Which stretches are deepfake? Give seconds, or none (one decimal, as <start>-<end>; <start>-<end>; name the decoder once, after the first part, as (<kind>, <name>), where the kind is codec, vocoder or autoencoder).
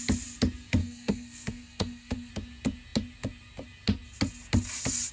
0.8-2.3 (codec, SNAC)